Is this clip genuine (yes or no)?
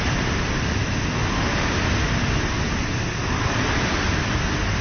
yes